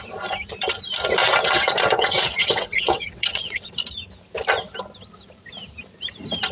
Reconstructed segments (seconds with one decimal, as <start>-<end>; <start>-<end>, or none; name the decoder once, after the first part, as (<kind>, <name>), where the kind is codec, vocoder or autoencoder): 1.2-3.7 (vocoder, WaveNeXt)